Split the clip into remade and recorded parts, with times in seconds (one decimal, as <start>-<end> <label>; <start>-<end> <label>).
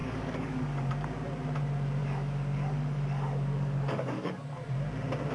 0.0-0.9 remade; 0.9-2.0 recorded; 2.0-4.4 remade; 4.4-5.3 recorded